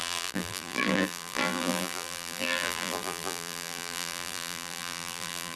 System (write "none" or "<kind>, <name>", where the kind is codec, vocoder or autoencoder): vocoder, BigVGAN v2